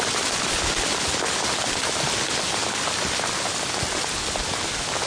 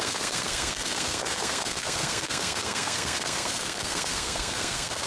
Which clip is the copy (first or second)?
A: second